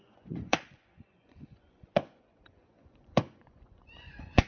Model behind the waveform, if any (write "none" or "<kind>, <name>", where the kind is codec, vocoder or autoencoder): vocoder, Vocos